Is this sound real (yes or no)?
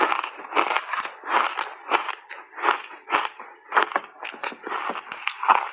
yes